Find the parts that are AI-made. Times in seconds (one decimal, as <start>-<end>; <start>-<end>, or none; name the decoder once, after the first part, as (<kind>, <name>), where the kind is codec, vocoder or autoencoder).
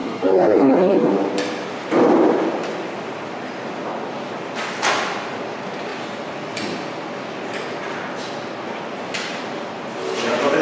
0.0-1.1 (codec, SNAC)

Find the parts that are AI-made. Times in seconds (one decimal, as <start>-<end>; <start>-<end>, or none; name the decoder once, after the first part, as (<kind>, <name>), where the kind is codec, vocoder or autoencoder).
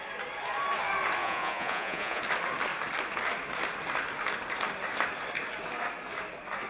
1.2-2.2 (vocoder, Vocos)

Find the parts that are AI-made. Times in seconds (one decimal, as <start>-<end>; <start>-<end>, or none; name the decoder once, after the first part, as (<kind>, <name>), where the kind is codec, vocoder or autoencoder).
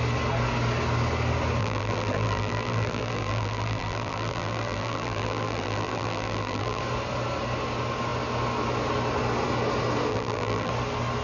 1.6-6.8 (vocoder, BigVGAN v2); 10.1-10.7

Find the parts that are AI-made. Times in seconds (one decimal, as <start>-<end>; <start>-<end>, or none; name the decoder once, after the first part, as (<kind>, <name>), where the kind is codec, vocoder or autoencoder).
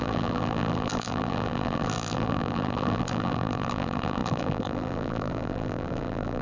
0.0-6.4 (vocoder, BigVGAN v2)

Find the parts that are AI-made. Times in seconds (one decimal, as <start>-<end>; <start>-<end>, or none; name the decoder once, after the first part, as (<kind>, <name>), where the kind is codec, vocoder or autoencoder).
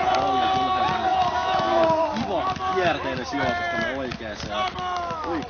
none